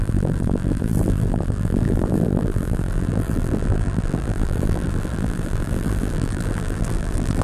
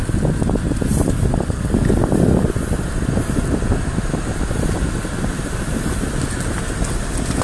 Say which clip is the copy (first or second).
first